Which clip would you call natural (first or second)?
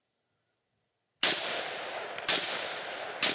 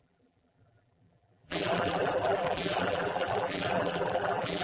first